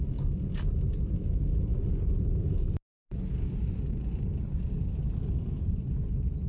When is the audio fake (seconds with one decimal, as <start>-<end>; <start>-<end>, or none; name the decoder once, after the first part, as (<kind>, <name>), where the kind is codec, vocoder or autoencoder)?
none